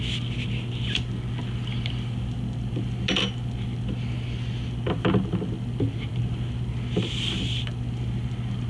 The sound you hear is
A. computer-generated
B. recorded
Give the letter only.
B